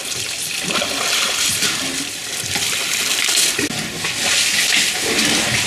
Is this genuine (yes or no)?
yes